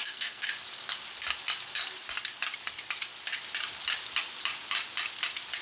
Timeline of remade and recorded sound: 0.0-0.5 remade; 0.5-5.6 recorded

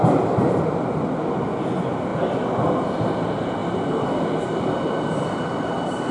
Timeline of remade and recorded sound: 0.0-6.1 recorded

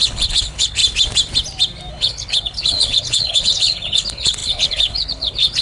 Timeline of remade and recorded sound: 0.0-0.8 remade; 0.8-1.9 recorded; 1.9-5.6 remade

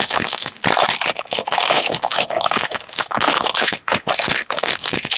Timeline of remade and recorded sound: 0.0-0.6 remade; 0.6-1.1 recorded; 1.1-5.2 remade

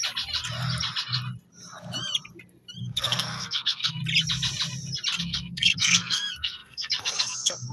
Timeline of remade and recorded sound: 0.0-2.8 recorded; 2.8-4.0 remade; 4.0-5.2 recorded; 5.2-7.7 remade

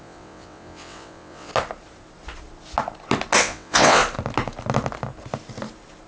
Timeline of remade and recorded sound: 0.0-1.5 remade; 1.5-3.4 recorded; 3.4-4.0 remade; 4.0-6.1 recorded

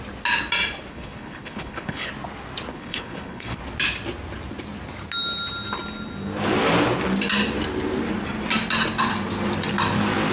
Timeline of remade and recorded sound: 0.0-0.9 recorded; 0.9-2.1 remade; 2.1-2.7 recorded; 2.7-3.6 remade; 3.6-10.3 recorded